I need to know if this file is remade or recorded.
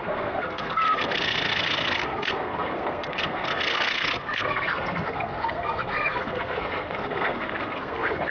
remade